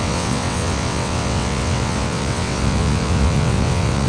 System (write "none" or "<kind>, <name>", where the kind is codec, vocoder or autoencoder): vocoder, WaveNeXt